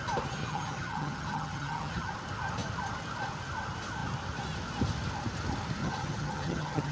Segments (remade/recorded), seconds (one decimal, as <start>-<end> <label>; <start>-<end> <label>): 0.0-0.4 recorded; 0.4-2.1 remade; 2.1-5.8 recorded; 5.8-6.9 remade

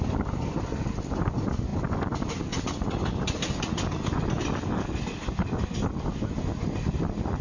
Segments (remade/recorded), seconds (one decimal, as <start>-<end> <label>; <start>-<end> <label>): 0.0-7.4 recorded

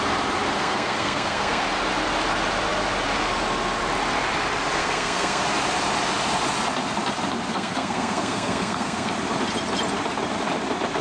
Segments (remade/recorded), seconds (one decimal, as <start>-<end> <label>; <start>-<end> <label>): 0.0-0.5 recorded; 0.5-1.6 remade; 1.6-4.8 recorded; 4.8-5.4 remade; 5.4-7.5 recorded; 7.5-9.1 remade; 9.1-11.0 recorded